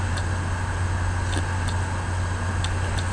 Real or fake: real